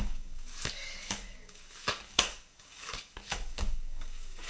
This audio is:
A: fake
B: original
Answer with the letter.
A